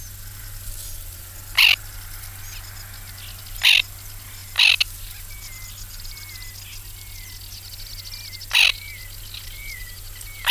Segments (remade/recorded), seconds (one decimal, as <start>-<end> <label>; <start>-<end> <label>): 0.0-10.5 recorded